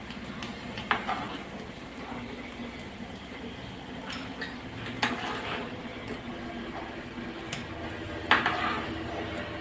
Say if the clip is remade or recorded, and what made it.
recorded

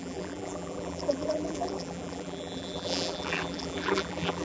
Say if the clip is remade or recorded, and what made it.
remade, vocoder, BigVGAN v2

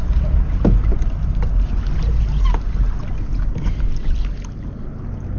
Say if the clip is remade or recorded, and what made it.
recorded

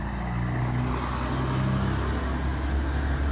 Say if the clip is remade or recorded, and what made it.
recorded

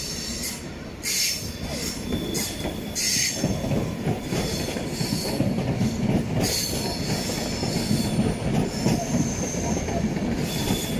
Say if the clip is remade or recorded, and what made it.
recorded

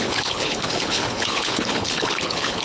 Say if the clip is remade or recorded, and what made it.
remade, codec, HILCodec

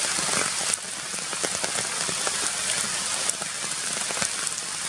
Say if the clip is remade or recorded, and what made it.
recorded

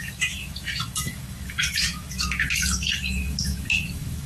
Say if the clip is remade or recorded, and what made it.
remade, autoencoder, DAC-VAE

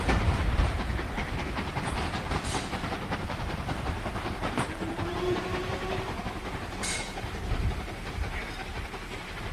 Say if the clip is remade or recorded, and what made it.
remade, vocoder, BigVGAN v2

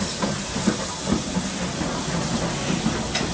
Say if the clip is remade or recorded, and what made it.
recorded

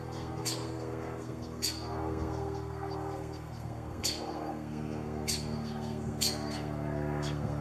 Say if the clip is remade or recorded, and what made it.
remade, codec, SNAC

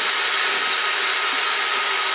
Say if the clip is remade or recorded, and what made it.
recorded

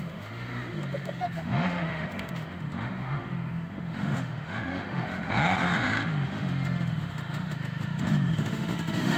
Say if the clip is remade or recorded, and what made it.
remade, autoencoder, DAC-VAE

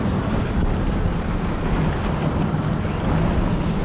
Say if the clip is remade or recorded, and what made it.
recorded